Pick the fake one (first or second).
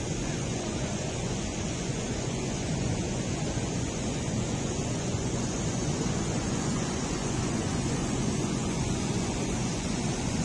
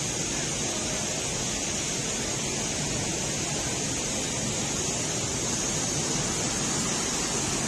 first